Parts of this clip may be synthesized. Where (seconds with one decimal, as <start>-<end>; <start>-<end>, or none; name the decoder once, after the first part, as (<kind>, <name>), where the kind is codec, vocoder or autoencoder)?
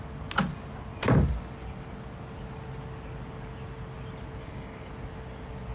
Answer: 4.4-4.9 (codec, DAC)